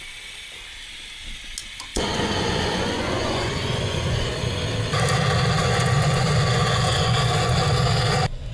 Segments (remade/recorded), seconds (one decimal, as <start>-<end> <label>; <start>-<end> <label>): 0.0-1.9 recorded; 1.9-4.6 remade; 4.6-5.6 recorded; 5.6-7.7 remade; 7.7-8.5 recorded